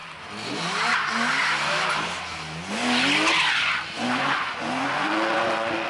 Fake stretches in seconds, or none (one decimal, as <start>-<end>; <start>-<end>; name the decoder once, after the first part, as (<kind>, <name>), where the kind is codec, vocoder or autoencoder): 3.5-5.9 (vocoder, Vocos)